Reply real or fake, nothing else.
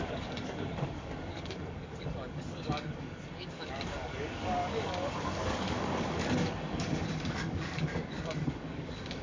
fake